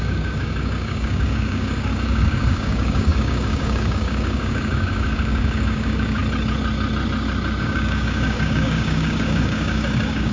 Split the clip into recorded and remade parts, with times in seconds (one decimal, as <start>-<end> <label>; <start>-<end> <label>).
0.0-6.2 remade; 6.2-7.6 recorded; 7.6-10.3 remade